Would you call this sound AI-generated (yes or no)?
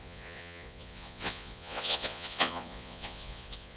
yes